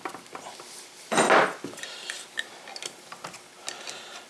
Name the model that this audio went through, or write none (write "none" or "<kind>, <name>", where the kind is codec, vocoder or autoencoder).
none